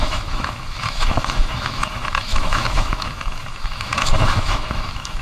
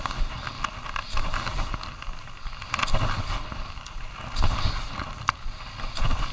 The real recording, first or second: second